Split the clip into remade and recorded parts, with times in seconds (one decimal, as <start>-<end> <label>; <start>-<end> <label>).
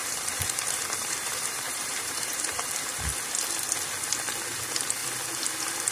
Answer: 0.0-2.7 remade; 2.7-5.9 recorded